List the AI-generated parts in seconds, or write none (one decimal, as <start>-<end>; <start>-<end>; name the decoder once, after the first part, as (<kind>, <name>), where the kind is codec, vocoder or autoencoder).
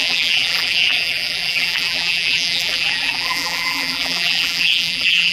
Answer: 0.0-5.3 (vocoder, BigVGAN v2)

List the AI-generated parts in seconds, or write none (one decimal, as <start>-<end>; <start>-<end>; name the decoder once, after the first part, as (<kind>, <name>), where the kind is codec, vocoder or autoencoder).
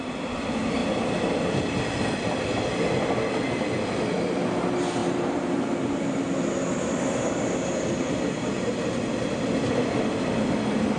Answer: none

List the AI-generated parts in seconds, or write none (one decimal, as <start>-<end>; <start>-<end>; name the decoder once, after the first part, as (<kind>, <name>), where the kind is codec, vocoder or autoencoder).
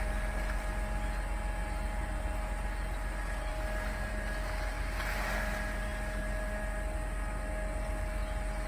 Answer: none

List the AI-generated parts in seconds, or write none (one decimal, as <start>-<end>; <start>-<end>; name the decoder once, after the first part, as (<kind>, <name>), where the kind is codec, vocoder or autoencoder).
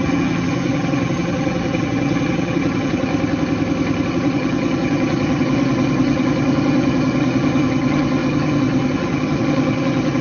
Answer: 0.0-3.1 (vocoder, HiFi-GAN); 4.1-10.2